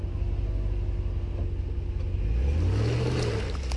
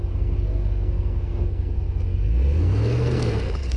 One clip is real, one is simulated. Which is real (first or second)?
first